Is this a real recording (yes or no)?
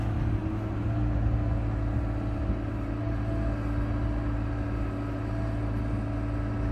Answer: yes